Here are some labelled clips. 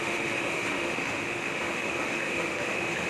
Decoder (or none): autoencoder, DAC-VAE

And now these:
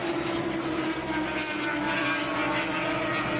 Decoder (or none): none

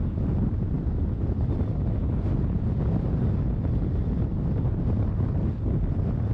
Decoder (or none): none